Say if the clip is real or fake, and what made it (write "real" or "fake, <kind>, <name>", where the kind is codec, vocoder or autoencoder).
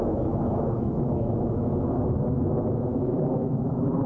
fake, autoencoder, DAC-VAE